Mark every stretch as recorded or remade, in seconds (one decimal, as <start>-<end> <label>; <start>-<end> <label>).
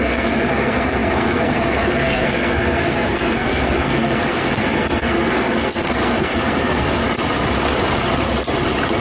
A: 0.0-7.0 remade; 7.0-9.0 recorded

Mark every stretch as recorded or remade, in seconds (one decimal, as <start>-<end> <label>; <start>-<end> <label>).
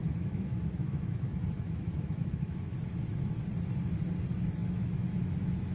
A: 0.0-3.4 remade; 3.4-4.6 recorded; 4.6-5.7 remade